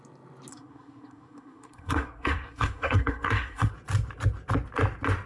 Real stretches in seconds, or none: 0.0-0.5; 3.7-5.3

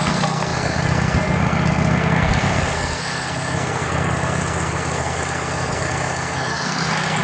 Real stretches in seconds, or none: none

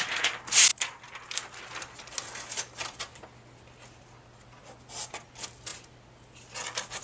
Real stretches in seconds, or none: 0.0-7.0

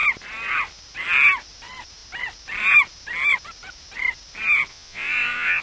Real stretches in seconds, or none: 0.0-4.7

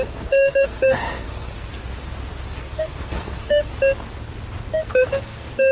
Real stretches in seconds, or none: 1.7-2.5; 3.7-4.7

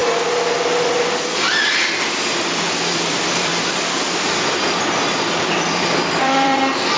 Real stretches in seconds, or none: 0.0-3.1; 6.6-7.0